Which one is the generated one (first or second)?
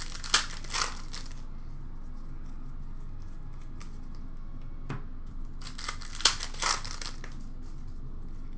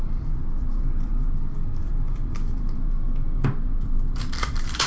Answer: second